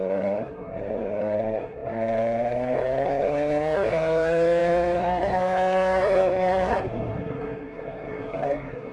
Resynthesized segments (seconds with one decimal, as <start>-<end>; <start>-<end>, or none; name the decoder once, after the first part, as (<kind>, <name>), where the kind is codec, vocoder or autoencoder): 0.0-8.9 (codec, SNAC)